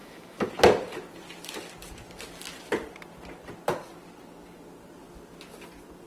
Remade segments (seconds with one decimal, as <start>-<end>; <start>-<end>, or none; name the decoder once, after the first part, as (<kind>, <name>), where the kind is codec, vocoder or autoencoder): 0.0-0.5 (autoencoder, DAC-VAE)